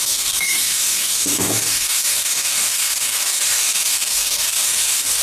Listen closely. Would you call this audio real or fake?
fake